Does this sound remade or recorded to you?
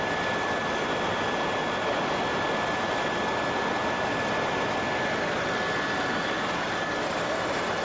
recorded